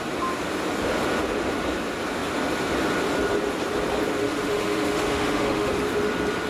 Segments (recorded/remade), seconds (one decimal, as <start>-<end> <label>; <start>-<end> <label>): 0.0-4.2 recorded; 4.2-5.7 remade; 5.7-6.5 recorded